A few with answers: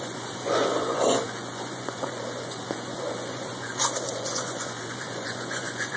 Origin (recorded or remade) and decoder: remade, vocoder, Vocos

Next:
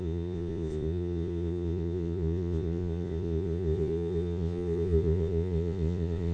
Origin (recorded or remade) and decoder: remade, vocoder, Vocos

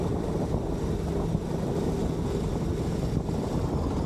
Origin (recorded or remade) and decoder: recorded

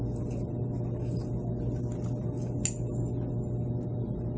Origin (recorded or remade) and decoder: recorded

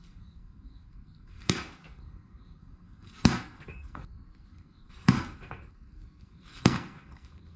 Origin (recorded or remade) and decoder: remade, codec, SNAC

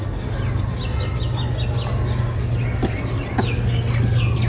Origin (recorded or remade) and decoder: recorded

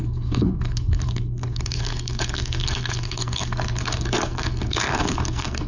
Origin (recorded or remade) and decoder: remade, codec, SNAC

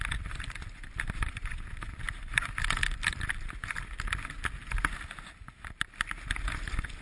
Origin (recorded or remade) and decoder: recorded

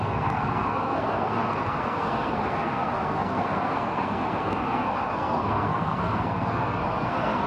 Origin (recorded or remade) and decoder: remade, codec, SNAC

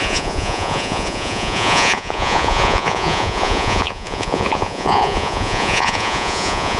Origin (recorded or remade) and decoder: remade, vocoder, Vocos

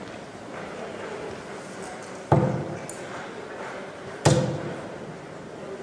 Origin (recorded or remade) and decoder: recorded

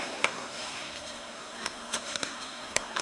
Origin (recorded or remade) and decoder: remade, codec, SNAC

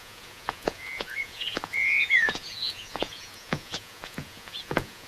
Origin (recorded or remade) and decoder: remade, vocoder, Vocos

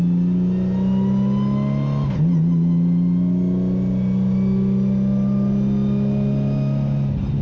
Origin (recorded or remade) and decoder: recorded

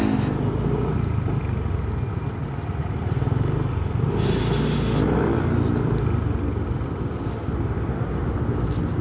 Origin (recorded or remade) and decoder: recorded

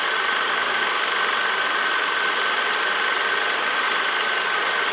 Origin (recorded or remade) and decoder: recorded